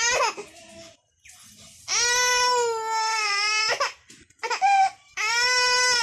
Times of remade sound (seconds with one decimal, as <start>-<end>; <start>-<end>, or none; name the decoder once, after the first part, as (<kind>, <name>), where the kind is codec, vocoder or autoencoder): none